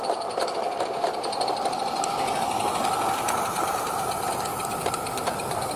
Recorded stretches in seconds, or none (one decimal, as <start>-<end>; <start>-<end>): 0.0-4.5